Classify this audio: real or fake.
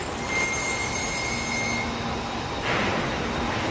real